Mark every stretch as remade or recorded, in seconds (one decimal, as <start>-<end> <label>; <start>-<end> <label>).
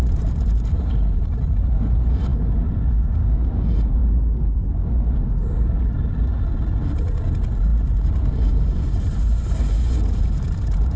0.0-2.3 remade; 2.3-3.5 recorded; 3.5-4.0 remade; 4.0-7.3 recorded; 7.3-11.0 remade